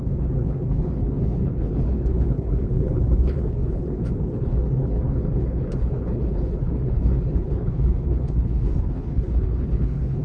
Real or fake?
fake